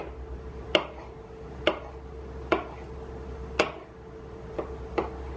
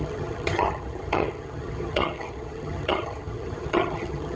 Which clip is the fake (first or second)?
second